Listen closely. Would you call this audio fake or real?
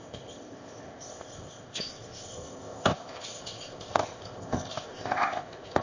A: fake